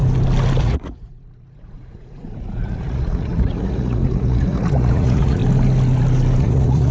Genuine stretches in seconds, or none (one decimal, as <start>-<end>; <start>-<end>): 0.0-0.6; 5.4-6.4